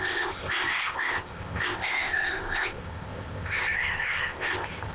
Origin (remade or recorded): remade